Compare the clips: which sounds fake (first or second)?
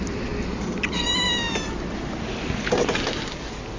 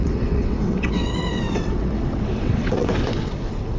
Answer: second